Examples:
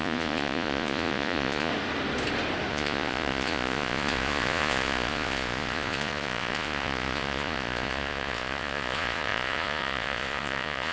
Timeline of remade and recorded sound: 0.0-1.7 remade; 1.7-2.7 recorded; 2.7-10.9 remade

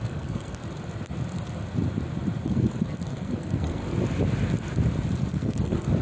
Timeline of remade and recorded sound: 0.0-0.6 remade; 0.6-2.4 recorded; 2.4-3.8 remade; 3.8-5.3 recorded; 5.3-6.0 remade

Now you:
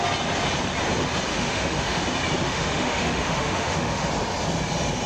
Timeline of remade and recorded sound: 0.0-1.3 recorded; 1.3-2.0 remade; 2.0-2.4 recorded; 2.4-4.1 remade; 4.1-5.1 recorded